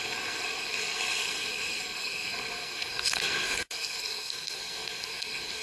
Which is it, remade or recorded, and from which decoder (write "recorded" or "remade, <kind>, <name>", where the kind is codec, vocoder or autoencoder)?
remade, codec, SNAC